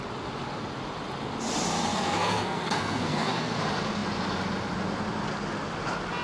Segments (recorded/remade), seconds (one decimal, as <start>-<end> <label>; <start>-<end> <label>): 0.0-1.9 recorded; 1.9-3.6 remade; 3.6-6.2 recorded